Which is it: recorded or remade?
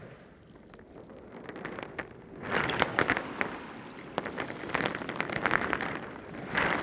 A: recorded